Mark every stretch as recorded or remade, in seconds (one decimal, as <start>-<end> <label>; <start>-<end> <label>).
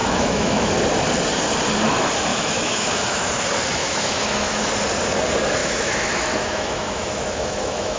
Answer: 0.0-0.7 remade; 0.7-2.3 recorded; 2.3-3.3 remade; 3.3-3.8 recorded; 3.8-4.6 remade; 4.6-5.6 recorded; 5.6-8.0 remade